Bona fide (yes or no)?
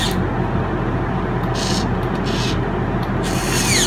yes